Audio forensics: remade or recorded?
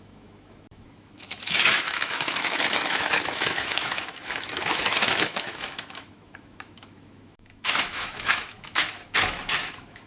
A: remade